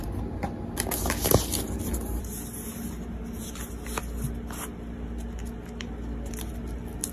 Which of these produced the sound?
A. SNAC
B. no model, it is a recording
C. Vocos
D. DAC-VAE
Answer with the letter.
B